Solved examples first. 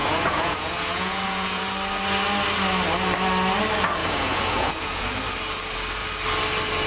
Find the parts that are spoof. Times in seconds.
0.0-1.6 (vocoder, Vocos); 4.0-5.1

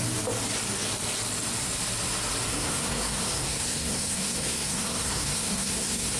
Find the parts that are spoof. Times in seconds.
2.5-6.2 (codec, SNAC)

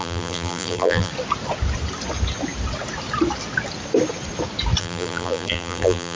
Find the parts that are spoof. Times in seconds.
0.0-1.1 (vocoder, BigVGAN v2); 4.8-6.2

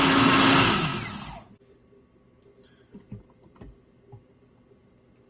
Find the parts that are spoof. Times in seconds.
none